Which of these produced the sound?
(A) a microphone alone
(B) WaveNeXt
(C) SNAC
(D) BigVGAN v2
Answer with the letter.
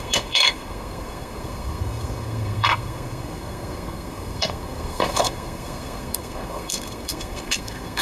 C